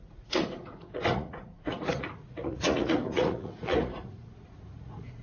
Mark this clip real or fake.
fake